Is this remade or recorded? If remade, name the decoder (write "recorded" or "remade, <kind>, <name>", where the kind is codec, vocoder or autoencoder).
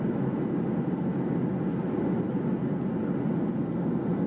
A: recorded